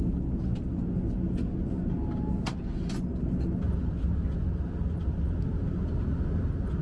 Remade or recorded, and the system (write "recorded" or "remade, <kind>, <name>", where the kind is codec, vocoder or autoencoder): recorded